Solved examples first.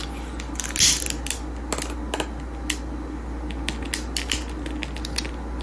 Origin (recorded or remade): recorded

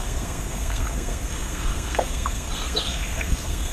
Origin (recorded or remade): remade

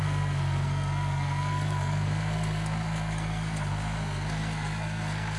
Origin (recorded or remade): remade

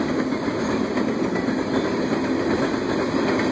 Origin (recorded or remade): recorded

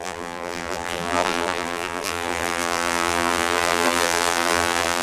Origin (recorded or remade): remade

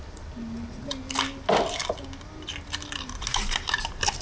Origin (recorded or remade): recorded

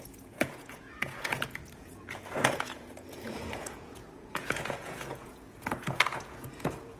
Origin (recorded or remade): remade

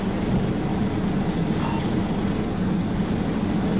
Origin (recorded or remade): recorded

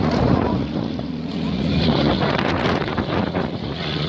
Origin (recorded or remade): remade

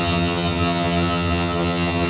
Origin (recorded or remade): remade